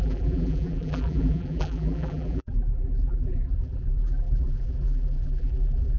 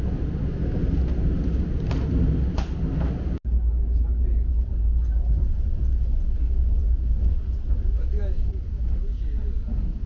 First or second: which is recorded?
second